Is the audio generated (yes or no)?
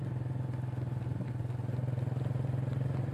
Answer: no